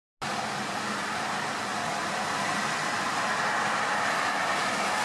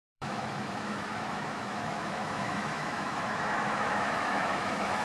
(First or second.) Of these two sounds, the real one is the first